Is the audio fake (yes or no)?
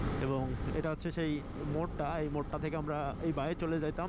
no